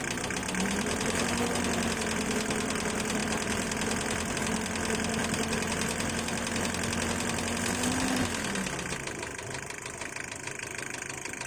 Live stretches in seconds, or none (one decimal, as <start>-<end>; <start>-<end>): 0.0-3.2; 4.3-11.5